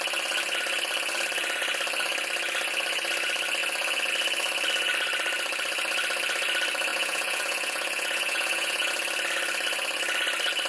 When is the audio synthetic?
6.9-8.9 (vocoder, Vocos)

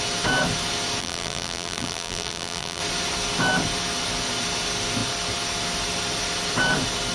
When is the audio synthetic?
1.0-2.8 (vocoder, BigVGAN v2)

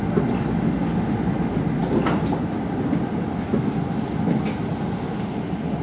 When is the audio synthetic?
none

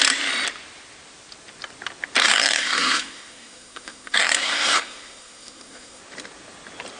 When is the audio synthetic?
2.2-6.0 (codec, SNAC)

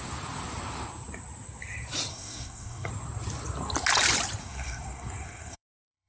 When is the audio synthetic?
2.1-2.9 (codec, SNAC); 4.4-6.1

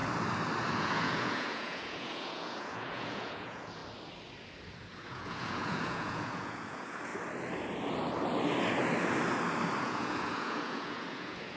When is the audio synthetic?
0.7-3.8 (vocoder, Vocos); 4.9-7.1; 9.8-11.6